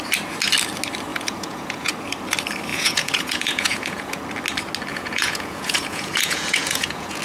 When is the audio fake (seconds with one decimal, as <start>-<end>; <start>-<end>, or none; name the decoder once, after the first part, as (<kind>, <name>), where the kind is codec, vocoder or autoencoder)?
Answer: 1.1-1.9 (vocoder, Vocos); 2.7-4.2; 4.9-7.2